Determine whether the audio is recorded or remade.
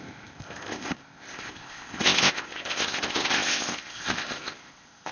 remade